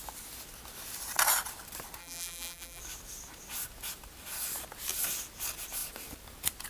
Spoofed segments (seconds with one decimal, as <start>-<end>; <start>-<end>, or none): 2.0-2.8